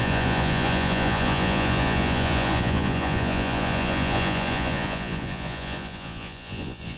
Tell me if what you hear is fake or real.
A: fake